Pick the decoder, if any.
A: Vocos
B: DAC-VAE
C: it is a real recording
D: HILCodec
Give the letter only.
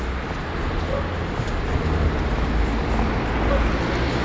C